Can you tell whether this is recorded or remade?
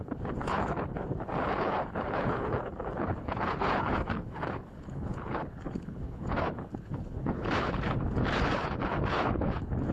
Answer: remade